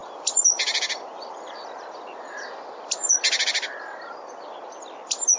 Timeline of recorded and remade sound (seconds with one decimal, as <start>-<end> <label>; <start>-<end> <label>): 0.0-5.4 remade